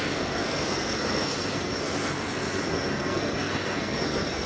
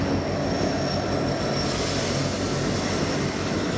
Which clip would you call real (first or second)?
second